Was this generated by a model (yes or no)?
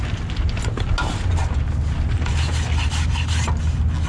no